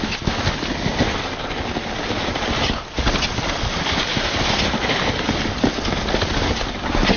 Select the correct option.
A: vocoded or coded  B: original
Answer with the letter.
B